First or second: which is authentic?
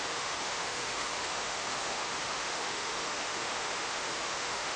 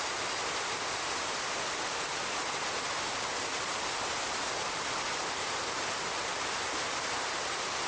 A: second